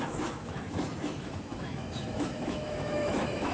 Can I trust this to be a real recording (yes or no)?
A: no